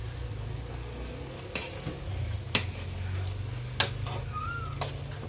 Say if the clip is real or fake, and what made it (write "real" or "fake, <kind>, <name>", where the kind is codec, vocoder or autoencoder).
real